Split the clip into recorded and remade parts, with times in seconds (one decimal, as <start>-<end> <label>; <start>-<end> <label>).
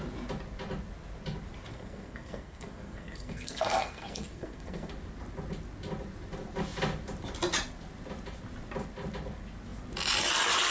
0.0-1.7 recorded; 1.7-4.9 remade; 4.9-10.7 recorded